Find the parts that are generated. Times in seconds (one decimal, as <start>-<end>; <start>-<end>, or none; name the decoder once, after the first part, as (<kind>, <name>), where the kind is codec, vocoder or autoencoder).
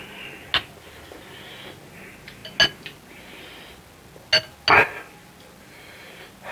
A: 0.0-0.5 (vocoder, BigVGAN v2); 2.0-2.4; 5.6-6.5